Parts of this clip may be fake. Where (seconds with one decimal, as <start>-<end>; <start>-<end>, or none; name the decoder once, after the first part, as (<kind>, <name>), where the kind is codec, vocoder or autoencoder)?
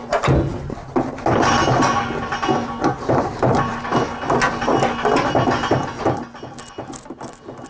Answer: none